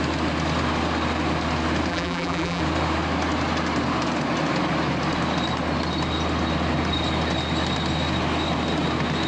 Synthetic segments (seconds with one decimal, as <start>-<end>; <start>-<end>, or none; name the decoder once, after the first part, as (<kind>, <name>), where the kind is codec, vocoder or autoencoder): 1.9-2.6 (vocoder, BigVGAN v2)